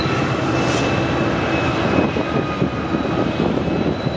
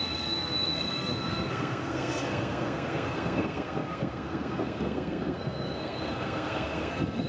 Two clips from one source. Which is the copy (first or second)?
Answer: second